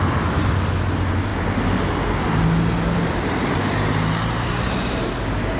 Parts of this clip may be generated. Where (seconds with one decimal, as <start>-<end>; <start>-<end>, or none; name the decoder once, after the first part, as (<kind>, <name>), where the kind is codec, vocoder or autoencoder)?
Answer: none